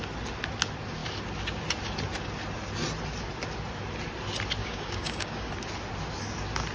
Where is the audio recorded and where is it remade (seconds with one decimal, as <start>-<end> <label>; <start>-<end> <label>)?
0.0-4.6 recorded; 4.6-5.5 remade; 5.5-6.7 recorded